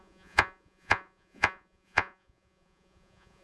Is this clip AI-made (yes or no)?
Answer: yes